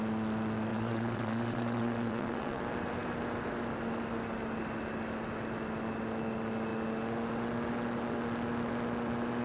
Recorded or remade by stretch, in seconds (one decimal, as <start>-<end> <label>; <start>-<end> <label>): 0.0-0.7 recorded; 0.7-2.6 remade; 2.6-9.4 recorded